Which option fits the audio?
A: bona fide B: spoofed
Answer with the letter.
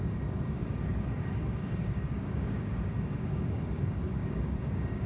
B